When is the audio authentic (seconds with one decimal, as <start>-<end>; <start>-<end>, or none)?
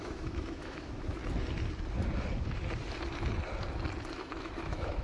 1.2-4.1